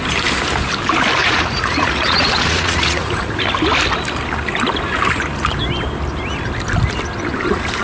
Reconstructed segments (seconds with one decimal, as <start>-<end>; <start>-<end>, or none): 1.2-3.3